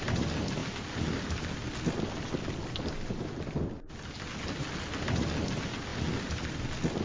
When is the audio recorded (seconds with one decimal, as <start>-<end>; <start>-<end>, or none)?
0.0-7.0